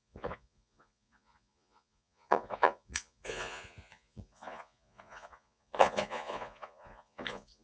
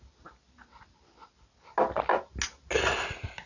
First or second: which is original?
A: second